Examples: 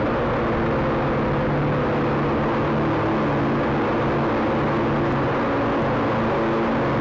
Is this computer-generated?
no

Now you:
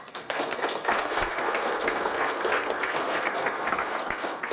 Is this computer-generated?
yes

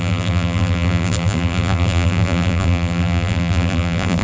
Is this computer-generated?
yes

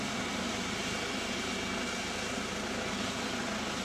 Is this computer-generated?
no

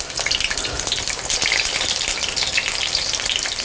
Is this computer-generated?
no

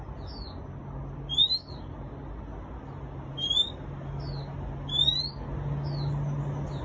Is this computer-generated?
no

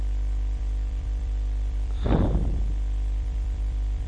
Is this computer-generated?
yes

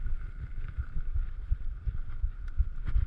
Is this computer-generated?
no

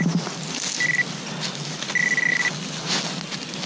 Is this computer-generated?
no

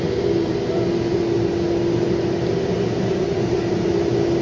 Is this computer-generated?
no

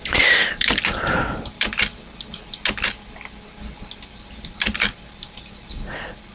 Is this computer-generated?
no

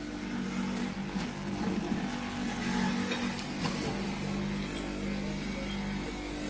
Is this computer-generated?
no